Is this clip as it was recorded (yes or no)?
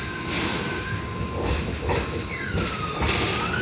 yes